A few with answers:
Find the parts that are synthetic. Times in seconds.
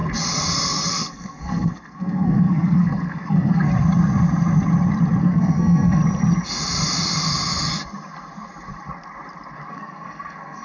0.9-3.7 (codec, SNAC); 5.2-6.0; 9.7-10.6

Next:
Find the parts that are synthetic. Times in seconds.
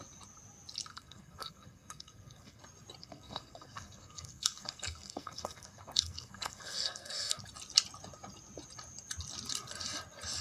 0.9-2.6 (codec, SNAC); 3.0-7.4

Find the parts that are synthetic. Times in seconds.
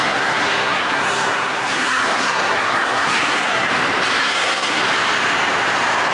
0.0-3.7 (codec, SNAC); 4.2-4.8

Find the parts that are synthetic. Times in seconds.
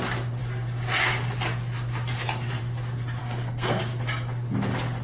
3.2-3.8 (codec, SNAC)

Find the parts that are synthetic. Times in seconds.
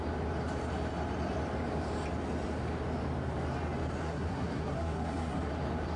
4.0-5.5 (codec, SNAC)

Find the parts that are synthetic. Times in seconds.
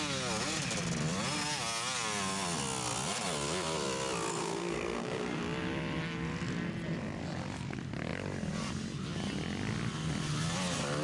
4.3-5.4 (codec, SNAC)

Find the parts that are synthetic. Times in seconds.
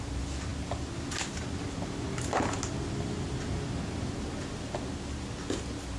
none